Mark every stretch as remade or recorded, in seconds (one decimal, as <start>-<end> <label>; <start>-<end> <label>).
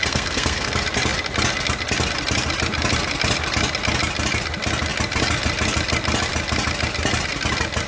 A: 0.0-0.7 remade; 0.7-7.9 recorded